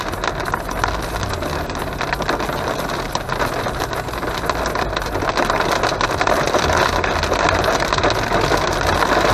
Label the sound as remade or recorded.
recorded